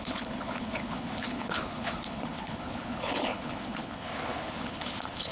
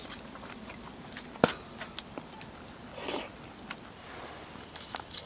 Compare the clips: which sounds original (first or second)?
second